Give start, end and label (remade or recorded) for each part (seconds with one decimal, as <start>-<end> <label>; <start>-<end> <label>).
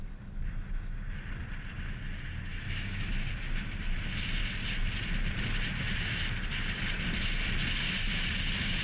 0.0-2.5 recorded; 2.5-3.1 remade; 3.1-8.8 recorded